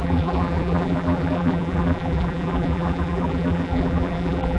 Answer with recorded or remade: remade